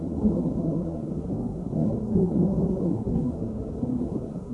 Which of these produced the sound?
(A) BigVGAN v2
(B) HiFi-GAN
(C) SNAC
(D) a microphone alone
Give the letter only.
C